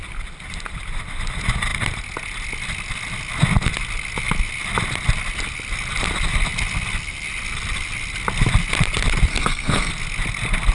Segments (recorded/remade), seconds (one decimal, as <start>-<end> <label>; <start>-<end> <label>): 0.0-9.3 recorded; 9.3-9.9 remade; 9.9-10.7 recorded